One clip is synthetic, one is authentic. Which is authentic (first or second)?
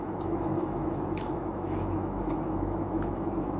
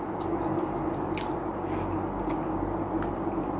second